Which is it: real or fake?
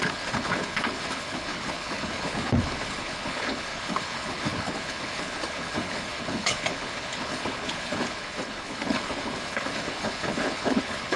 fake